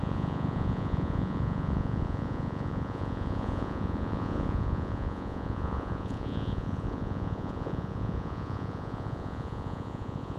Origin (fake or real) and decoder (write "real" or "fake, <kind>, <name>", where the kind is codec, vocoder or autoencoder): fake, vocoder, Vocos